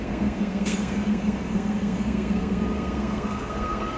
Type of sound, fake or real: fake